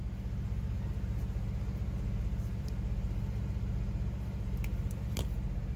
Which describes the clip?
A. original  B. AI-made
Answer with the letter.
A